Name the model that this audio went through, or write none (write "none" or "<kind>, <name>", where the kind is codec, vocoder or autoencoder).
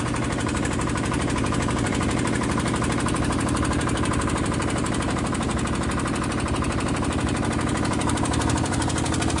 vocoder, BigVGAN v2